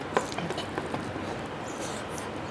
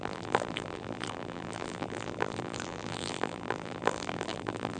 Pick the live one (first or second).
first